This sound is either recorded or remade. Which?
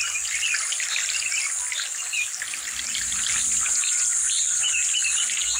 recorded